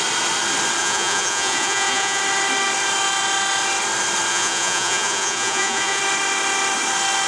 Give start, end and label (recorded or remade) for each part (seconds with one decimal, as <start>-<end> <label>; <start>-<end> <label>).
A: 0.0-0.8 recorded; 0.8-2.2 remade; 2.2-4.3 recorded; 4.3-6.0 remade; 6.0-7.3 recorded